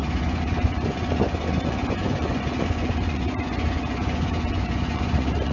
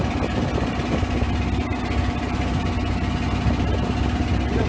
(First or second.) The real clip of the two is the second